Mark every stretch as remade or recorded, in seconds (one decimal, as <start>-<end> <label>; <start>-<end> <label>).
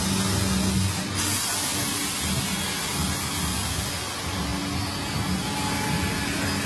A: 0.0-6.7 recorded